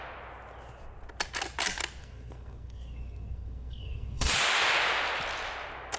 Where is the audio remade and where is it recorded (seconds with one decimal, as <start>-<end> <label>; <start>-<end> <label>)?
0.0-2.0 recorded; 2.0-4.3 remade; 4.3-6.0 recorded